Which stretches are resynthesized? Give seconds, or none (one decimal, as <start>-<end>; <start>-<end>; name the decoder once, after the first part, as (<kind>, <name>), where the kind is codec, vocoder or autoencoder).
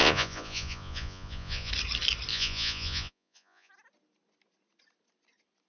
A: 0.0-1.7 (vocoder, Vocos); 2.3-3.7